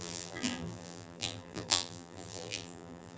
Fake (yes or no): yes